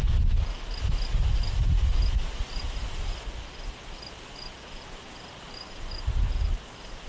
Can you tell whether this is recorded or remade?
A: recorded